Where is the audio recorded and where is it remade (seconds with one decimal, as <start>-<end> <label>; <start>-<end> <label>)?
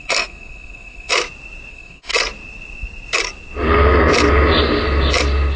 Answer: 0.0-1.1 remade; 1.1-1.7 recorded; 1.7-2.1 remade; 2.1-5.6 recorded